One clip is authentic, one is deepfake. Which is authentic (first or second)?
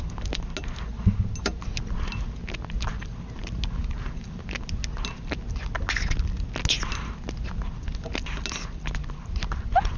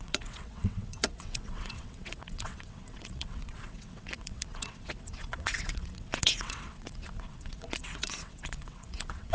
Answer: first